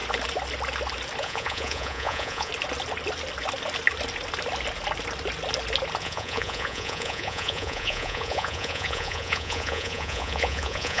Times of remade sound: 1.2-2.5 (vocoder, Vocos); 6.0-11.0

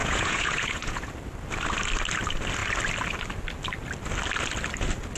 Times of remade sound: 0.0-1.1 (vocoder, Vocos)